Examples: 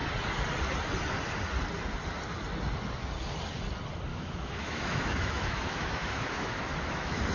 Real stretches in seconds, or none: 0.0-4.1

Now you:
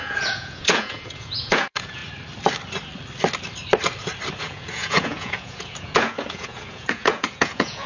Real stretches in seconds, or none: 2.0-4.4

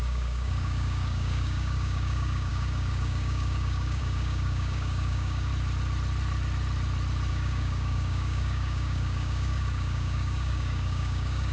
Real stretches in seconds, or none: 5.5-7.3

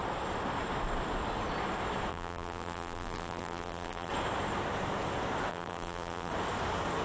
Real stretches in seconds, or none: 0.0-2.1; 4.1-5.5; 6.3-7.0

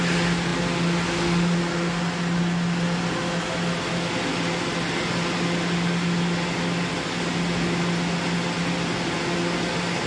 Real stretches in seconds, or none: 0.0-10.1

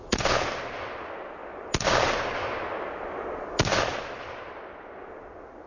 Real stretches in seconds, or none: 0.0-5.7